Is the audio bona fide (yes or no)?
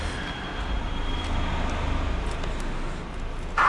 yes